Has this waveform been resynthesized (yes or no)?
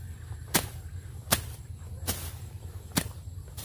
no